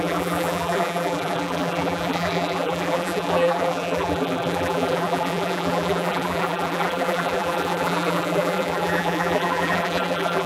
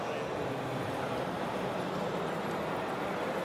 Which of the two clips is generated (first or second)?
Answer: first